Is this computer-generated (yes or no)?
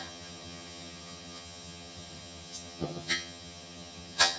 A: yes